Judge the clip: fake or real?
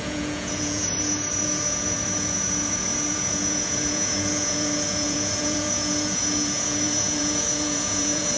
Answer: fake